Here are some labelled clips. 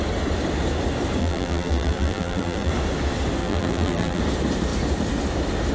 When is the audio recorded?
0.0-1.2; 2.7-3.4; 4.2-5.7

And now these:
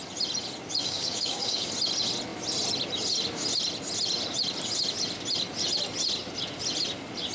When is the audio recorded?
0.0-0.8; 1.7-7.3

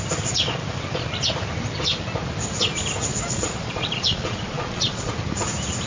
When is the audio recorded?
0.0-3.1; 5.1-5.9

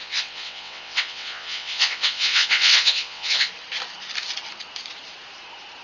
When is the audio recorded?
3.5-5.8

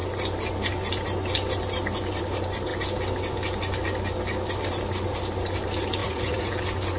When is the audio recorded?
0.0-6.0; 6.5-7.0